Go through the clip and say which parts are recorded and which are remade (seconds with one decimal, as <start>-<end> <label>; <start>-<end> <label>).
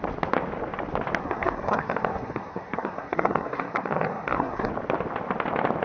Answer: 0.0-1.2 recorded; 1.2-4.7 remade; 4.7-5.8 recorded